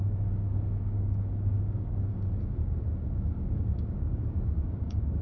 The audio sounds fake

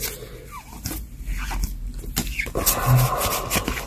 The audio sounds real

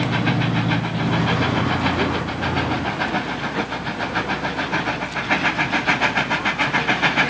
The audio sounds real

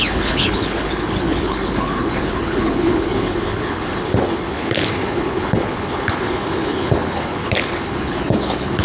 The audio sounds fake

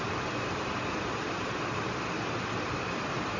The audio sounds real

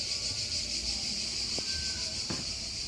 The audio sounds real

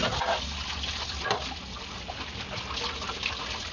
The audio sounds real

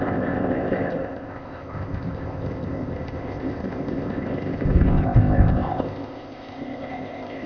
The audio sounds fake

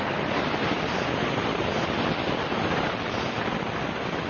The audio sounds real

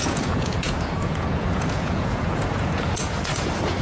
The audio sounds fake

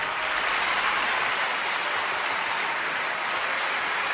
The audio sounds real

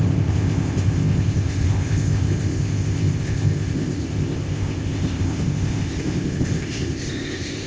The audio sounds fake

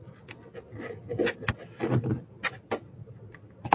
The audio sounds real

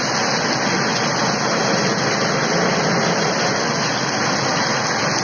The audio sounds real